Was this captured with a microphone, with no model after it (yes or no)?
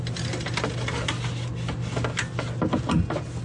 yes